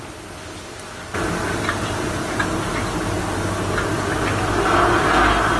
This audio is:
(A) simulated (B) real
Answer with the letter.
B